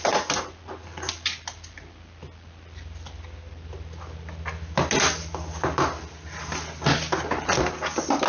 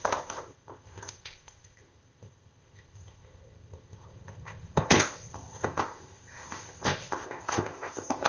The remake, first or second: second